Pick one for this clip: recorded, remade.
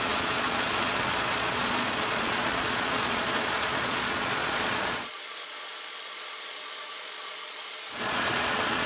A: remade